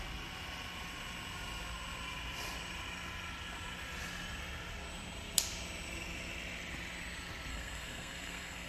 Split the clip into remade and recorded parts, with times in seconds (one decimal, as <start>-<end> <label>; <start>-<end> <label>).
0.0-7.5 recorded; 7.5-8.7 remade